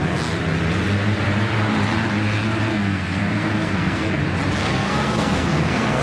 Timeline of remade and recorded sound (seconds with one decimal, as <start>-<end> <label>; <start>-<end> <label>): 0.0-2.7 recorded; 2.7-4.1 remade; 4.1-4.6 recorded; 4.6-6.0 remade